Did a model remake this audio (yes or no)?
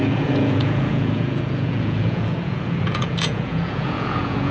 yes